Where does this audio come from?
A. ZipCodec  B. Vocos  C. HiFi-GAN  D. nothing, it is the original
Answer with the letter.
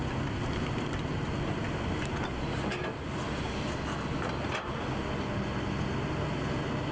D